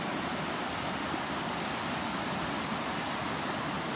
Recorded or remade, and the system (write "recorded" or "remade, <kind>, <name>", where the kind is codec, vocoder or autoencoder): recorded